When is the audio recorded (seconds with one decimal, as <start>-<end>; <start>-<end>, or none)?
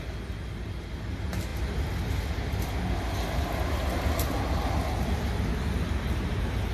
0.0-6.7